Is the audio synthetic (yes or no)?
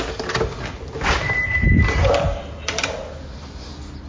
no